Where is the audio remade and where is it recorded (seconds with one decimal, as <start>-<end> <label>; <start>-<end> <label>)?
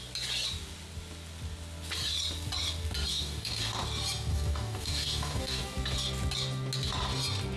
0.0-3.1 recorded; 3.1-3.8 remade; 3.8-4.3 recorded; 4.3-5.6 remade; 5.6-7.6 recorded